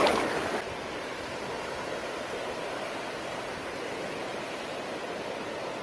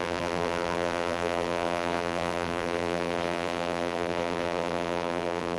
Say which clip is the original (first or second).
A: first